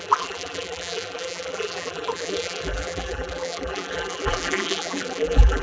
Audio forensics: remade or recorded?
remade